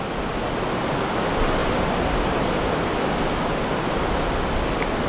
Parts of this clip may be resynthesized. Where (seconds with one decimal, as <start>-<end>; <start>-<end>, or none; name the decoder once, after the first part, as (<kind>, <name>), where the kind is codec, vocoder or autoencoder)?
none